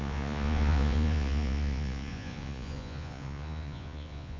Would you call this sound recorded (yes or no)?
no